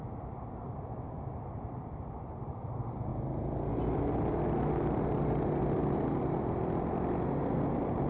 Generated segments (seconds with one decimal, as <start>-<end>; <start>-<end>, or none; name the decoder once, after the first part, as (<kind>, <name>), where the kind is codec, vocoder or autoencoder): none